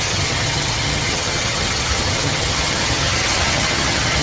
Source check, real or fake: fake